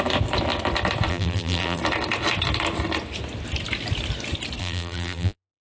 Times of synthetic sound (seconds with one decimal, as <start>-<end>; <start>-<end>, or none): 1.1-1.8; 4.6-5.6